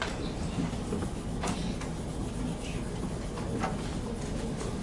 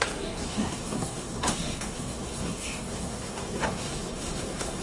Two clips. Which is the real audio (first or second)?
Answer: first